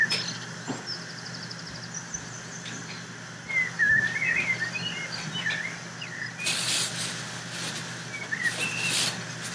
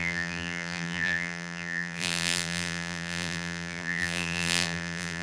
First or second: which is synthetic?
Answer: second